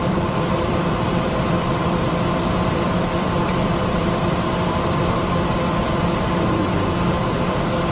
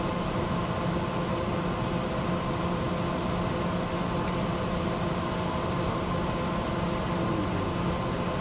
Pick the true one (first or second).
second